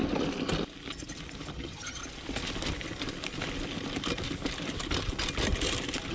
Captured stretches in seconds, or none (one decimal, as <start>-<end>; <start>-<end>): 0.0-1.5; 2.0-6.1